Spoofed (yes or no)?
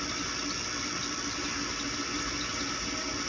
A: no